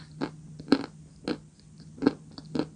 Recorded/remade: recorded